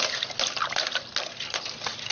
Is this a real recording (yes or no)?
yes